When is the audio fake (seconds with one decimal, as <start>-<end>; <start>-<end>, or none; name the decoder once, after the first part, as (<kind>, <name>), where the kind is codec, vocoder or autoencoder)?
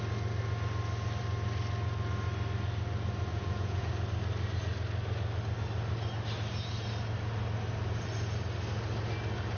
3.3-3.9 (vocoder, Vocos)